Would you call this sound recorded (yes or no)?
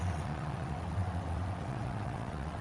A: no